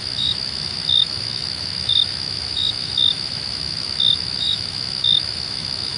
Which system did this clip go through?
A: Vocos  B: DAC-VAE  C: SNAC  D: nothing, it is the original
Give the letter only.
B